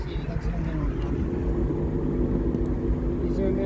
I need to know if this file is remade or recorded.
recorded